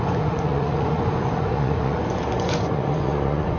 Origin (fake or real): fake